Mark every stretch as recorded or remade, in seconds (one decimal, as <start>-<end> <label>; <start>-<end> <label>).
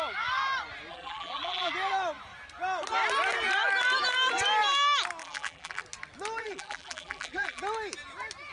0.0-0.9 recorded; 0.9-1.7 remade; 1.7-5.2 recorded; 5.2-5.8 remade; 5.8-6.4 recorded; 6.4-7.6 remade; 7.6-8.5 recorded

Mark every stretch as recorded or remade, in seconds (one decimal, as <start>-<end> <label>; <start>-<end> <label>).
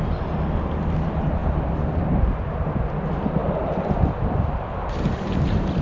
0.0-1.4 recorded; 1.4-2.0 remade; 2.0-3.4 recorded; 3.4-5.2 remade; 5.2-5.8 recorded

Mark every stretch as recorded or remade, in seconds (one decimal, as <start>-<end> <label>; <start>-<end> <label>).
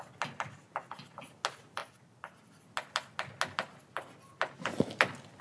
0.0-5.4 recorded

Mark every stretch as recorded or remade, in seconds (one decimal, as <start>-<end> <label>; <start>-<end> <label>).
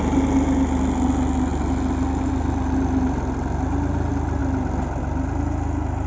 0.0-6.1 recorded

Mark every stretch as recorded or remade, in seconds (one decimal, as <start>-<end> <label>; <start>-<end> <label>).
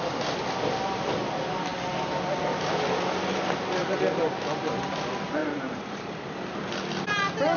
0.0-3.8 recorded; 3.8-4.7 remade; 4.7-5.4 recorded; 5.4-6.3 remade; 6.3-7.6 recorded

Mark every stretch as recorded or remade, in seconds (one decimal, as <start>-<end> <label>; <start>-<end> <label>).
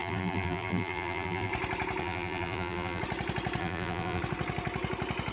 0.0-1.5 remade; 1.5-2.0 recorded; 2.0-3.0 remade; 3.0-3.6 recorded; 3.6-4.2 remade; 4.2-5.3 recorded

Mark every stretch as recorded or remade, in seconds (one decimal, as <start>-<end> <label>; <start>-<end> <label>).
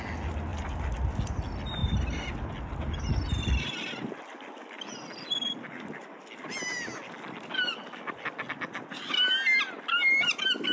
0.0-0.5 recorded; 0.5-1.4 remade; 1.4-10.7 recorded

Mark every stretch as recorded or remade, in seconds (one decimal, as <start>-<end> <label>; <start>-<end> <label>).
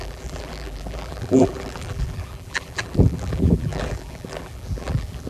0.0-5.3 remade